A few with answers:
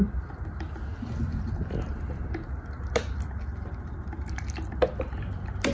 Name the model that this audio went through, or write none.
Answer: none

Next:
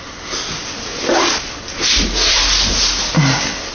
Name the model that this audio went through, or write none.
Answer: none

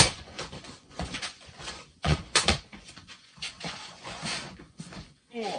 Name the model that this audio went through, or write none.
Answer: vocoder, Vocos